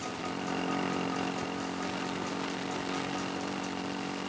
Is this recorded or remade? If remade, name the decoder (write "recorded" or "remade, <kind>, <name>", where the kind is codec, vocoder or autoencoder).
recorded